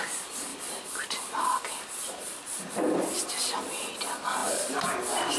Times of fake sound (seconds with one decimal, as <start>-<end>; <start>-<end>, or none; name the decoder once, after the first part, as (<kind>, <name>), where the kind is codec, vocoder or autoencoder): 4.4-4.9 (vocoder, BigVGAN v2)